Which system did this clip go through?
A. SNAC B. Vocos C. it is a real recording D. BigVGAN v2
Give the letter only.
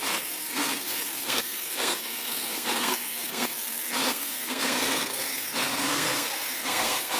A